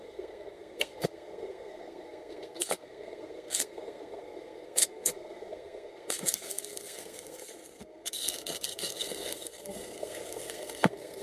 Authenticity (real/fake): fake